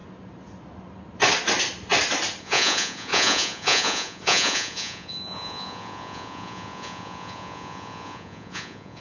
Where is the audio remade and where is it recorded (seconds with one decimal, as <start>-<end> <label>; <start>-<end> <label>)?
0.0-2.4 recorded; 2.4-9.0 remade